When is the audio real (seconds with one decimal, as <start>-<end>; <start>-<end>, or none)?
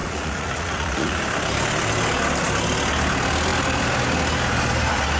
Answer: 1.2-5.2